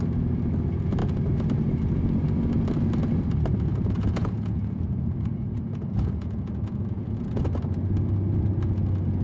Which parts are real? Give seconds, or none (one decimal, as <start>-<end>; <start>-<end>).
0.0-3.7; 7.4-9.2